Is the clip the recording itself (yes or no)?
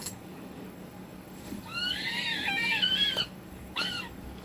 no